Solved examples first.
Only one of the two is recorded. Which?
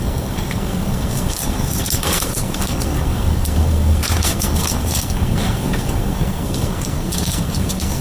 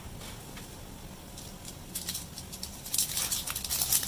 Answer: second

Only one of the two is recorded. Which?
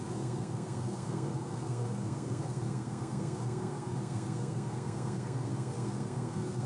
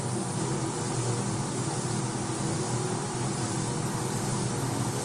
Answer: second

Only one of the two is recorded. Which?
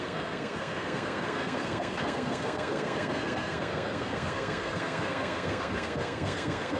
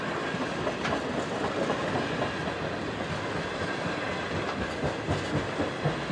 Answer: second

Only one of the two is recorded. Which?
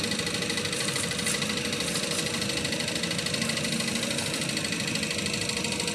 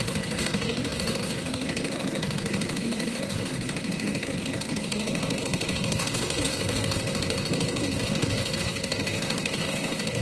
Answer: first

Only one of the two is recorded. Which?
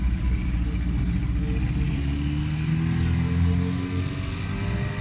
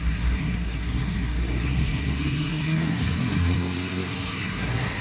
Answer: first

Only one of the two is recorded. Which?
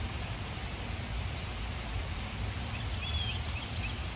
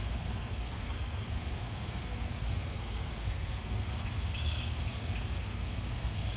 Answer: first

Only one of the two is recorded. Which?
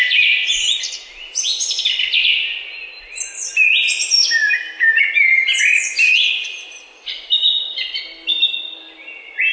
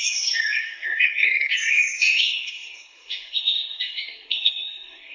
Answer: first